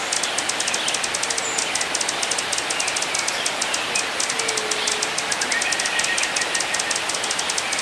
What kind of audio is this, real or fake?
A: real